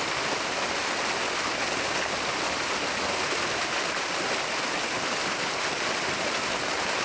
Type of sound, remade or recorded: recorded